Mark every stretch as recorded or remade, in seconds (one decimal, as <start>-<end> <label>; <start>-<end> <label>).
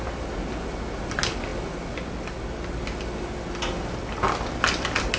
0.0-5.2 recorded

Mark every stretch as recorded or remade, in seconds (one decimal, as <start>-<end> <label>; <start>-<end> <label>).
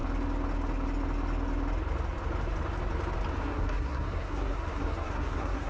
0.0-3.4 recorded; 3.4-5.7 remade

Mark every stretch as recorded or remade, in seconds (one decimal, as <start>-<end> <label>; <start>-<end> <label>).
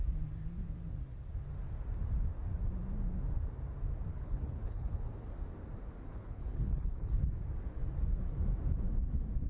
0.0-4.1 recorded; 4.1-5.0 remade; 5.0-6.1 recorded; 6.1-7.2 remade; 7.2-9.5 recorded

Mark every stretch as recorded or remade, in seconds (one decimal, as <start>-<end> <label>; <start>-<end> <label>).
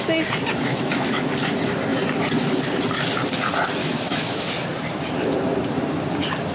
0.0-0.7 recorded; 0.7-1.3 remade; 1.3-3.8 recorded; 3.8-4.5 remade; 4.5-6.5 recorded